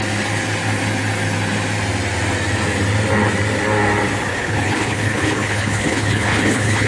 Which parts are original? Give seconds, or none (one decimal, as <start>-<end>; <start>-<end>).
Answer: 0.0-4.3